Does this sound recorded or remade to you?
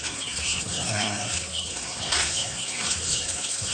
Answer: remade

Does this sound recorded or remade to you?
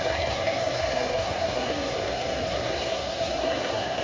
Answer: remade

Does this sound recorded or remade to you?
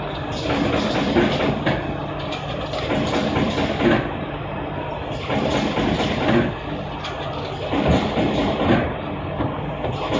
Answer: recorded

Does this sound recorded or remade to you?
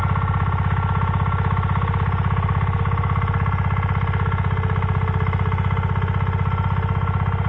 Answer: recorded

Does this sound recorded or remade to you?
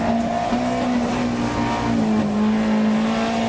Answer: recorded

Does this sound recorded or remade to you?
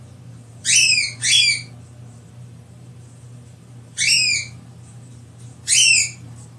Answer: remade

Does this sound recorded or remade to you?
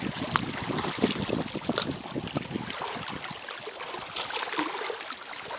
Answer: recorded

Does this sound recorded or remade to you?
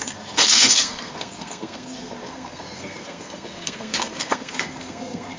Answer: remade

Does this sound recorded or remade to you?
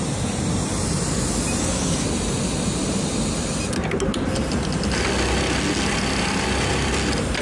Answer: recorded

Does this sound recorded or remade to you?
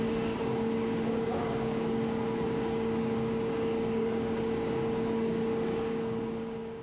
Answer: remade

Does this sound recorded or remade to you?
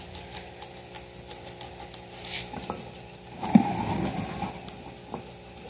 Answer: recorded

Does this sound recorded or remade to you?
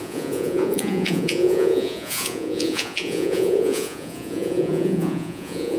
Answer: remade